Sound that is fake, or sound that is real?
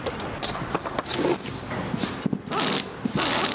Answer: real